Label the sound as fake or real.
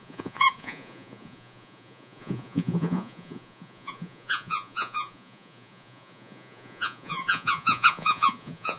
fake